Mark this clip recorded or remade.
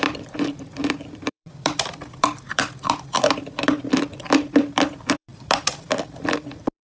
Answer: remade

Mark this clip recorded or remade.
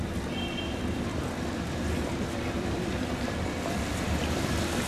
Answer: remade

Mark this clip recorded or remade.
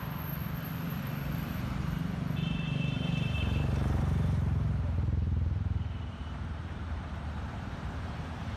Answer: remade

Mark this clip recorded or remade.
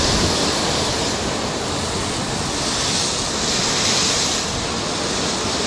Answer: recorded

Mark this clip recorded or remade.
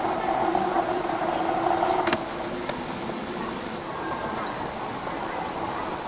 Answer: recorded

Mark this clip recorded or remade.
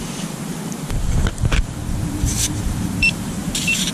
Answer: remade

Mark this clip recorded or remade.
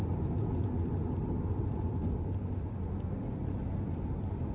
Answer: recorded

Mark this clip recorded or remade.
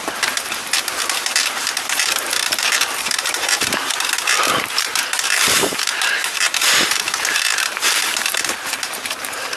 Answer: remade